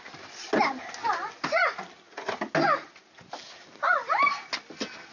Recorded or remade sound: recorded